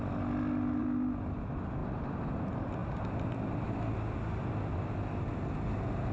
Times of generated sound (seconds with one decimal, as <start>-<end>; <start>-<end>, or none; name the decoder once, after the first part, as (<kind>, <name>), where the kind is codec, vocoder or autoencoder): 0.8-1.4 (vocoder, BigVGAN v2); 2.8-3.4